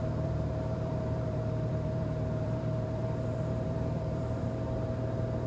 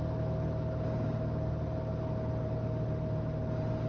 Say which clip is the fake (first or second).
first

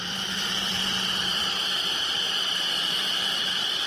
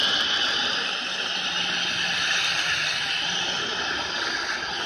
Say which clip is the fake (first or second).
first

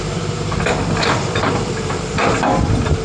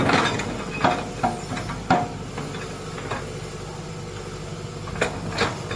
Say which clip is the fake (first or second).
first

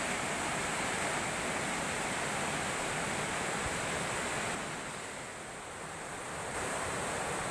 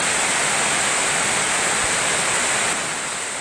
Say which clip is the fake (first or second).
first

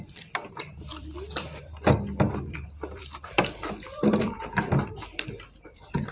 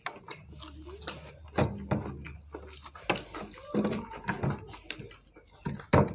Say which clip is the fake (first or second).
first